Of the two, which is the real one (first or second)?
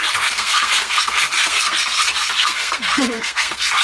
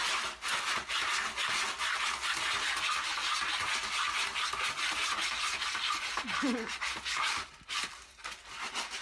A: second